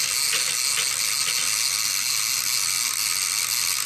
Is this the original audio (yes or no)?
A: yes